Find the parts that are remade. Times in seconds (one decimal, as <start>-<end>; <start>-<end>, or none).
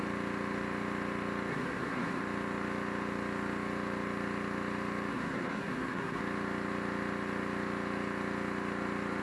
1.5-2.2; 5.1-6.2